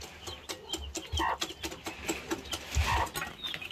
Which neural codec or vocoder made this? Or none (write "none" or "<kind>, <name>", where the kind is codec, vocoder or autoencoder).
none